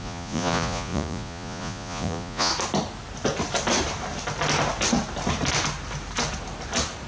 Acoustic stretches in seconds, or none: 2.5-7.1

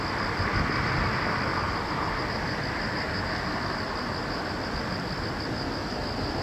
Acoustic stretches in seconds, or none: 0.0-1.5; 2.1-6.4

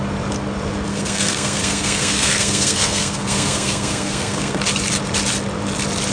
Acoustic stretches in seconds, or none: 0.0-0.9; 4.6-6.1